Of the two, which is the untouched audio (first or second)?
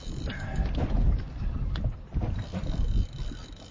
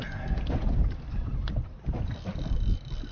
first